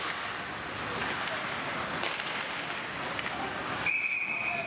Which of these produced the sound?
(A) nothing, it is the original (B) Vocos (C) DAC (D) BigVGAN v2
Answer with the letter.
A